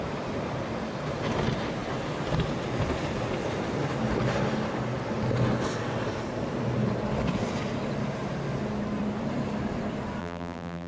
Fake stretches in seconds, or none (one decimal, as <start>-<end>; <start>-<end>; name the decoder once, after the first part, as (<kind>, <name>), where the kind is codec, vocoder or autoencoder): 10.2-10.9 (vocoder, BigVGAN v2)